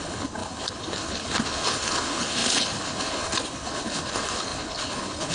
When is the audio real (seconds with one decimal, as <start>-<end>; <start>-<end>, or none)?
none